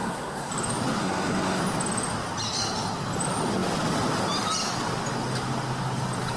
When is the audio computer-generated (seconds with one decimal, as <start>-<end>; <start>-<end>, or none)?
0.0-0.5; 1.0-1.6